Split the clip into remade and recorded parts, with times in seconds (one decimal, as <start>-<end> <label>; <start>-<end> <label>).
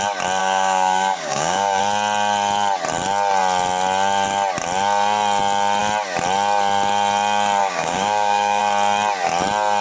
0.0-0.4 recorded; 0.4-1.8 remade; 1.8-7.6 recorded; 7.6-8.6 remade; 8.6-9.8 recorded